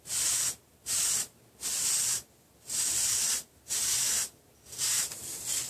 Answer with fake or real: real